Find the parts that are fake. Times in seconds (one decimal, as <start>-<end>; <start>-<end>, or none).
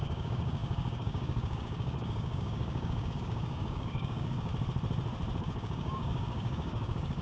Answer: 0.0-4.5; 5.4-7.2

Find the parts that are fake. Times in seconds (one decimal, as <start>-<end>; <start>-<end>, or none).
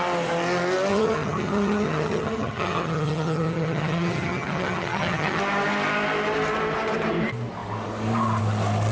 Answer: 0.9-5.4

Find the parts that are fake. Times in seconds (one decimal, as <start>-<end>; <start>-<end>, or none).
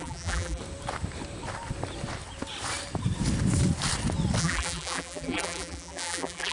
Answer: 0.0-0.6; 4.4-6.5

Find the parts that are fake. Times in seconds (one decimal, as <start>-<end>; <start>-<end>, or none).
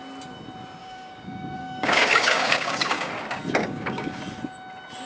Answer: 0.8-3.1; 3.6-4.2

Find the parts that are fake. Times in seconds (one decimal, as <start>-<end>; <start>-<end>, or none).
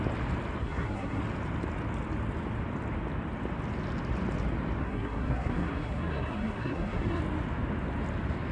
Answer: 0.6-1.2; 4.8-7.2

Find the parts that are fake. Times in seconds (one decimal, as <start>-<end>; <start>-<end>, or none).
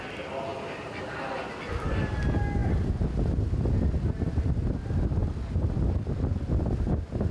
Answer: none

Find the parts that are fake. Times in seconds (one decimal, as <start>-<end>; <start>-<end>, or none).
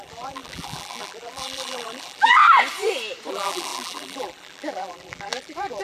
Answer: 0.0-2.4; 3.3-5.8